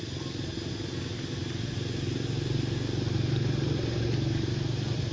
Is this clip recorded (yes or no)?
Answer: yes